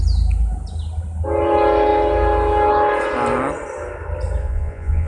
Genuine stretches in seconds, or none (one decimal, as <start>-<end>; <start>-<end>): 0.0-4.4